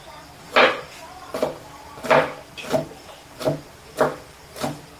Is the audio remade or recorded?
recorded